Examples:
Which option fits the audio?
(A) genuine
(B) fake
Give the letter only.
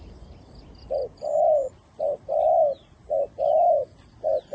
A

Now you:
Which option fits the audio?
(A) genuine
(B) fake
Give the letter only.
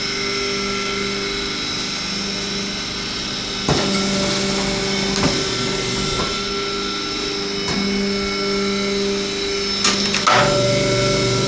A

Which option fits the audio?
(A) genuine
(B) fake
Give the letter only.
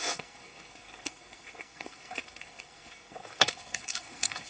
B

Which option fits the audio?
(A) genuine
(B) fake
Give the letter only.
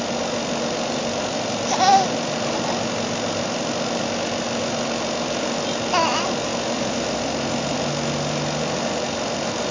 A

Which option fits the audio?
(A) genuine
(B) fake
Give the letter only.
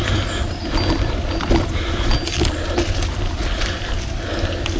A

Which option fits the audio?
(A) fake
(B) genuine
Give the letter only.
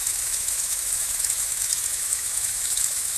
A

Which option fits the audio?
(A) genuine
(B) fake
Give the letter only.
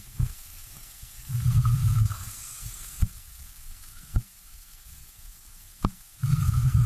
B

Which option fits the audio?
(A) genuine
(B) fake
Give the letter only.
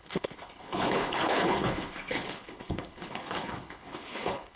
B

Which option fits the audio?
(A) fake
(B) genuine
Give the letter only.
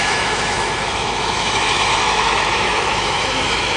A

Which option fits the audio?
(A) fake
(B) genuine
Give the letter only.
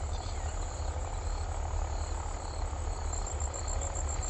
B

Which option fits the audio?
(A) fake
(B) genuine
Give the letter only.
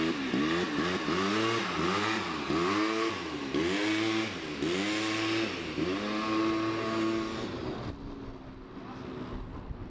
B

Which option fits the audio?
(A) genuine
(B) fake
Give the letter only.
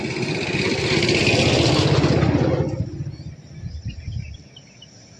A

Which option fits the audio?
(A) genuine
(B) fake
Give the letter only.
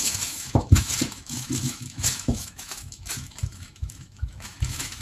B